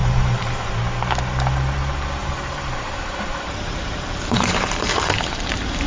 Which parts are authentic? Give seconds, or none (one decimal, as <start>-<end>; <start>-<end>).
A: 0.7-2.2